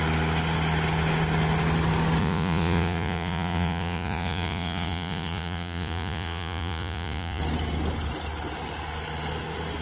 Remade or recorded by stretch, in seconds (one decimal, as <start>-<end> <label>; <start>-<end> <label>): 0.0-2.2 recorded; 2.2-7.4 remade; 7.4-9.8 recorded